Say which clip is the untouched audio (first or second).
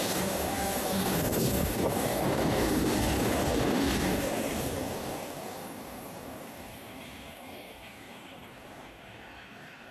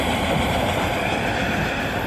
second